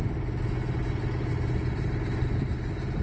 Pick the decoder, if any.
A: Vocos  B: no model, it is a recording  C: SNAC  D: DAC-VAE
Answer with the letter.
B